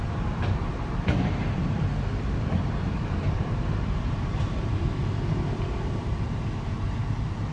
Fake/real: fake